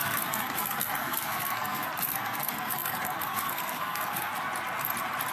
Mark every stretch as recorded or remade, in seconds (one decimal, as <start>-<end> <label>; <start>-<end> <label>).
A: 0.0-4.3 remade; 4.3-5.3 recorded